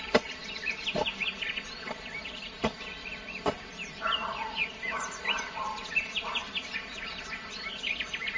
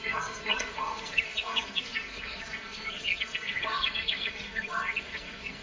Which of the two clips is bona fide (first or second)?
first